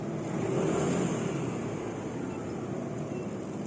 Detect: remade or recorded recorded